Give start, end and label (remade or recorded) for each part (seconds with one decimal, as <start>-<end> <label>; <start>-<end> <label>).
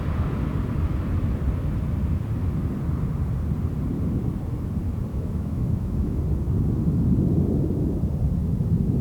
0.0-5.1 recorded; 5.1-6.2 remade; 6.2-9.0 recorded